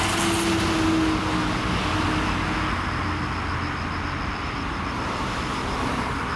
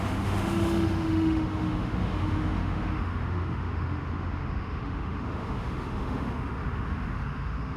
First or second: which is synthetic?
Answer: second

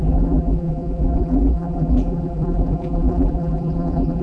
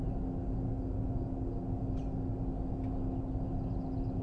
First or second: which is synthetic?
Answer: first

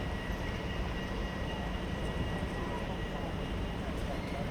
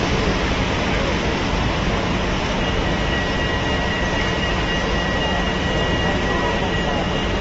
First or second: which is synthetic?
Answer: first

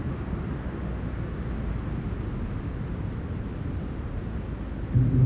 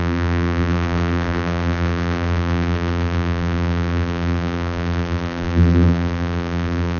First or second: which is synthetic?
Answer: second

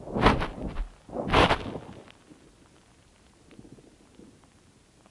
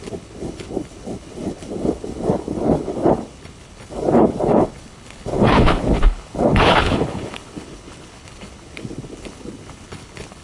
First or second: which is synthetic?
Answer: second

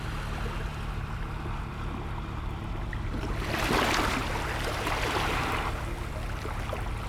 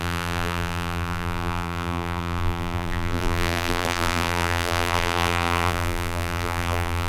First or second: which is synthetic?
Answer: second